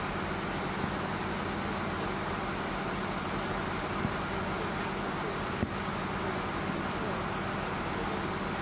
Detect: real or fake real